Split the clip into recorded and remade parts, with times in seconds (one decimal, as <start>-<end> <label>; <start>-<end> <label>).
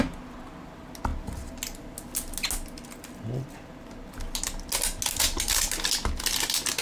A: 0.0-6.8 recorded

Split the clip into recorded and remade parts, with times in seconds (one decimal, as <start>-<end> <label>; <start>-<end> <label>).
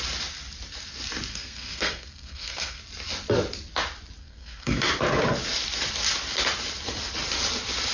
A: 0.0-1.3 recorded; 1.3-2.8 remade; 2.8-4.2 recorded; 4.2-4.8 remade; 4.8-7.9 recorded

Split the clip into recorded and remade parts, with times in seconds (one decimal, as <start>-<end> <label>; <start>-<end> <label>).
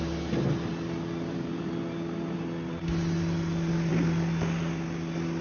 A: 0.0-5.4 recorded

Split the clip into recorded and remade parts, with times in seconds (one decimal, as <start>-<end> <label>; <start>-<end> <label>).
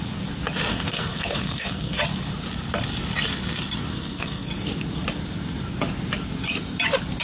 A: 0.0-0.7 recorded; 0.7-2.0 remade; 2.0-3.9 recorded; 3.9-4.5 remade; 4.5-7.2 recorded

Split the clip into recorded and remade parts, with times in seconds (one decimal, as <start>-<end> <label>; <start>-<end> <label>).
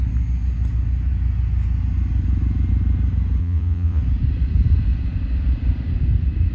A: 0.0-3.4 recorded; 3.4-4.0 remade; 4.0-6.5 recorded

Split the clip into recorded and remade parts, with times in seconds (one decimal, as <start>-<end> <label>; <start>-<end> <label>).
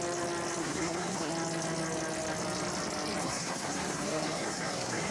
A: 0.0-0.6 recorded; 0.6-1.3 remade; 1.3-3.2 recorded; 3.2-5.1 remade